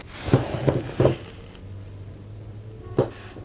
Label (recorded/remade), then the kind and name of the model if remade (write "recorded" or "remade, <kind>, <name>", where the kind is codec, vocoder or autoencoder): recorded